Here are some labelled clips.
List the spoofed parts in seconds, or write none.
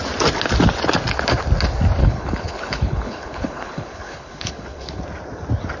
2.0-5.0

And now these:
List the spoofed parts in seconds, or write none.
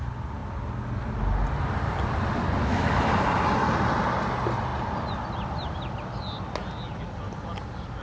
2.6-3.1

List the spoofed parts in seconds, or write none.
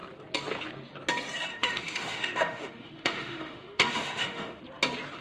1.5-4.6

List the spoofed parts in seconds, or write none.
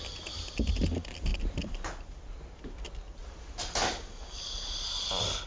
none